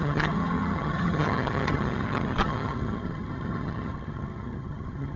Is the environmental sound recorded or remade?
remade